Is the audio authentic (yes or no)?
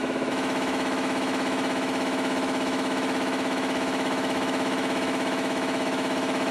no